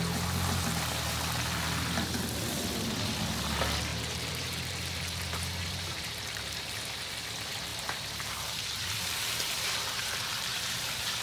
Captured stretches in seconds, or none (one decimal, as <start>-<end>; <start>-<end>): 0.0-3.9; 7.0-7.7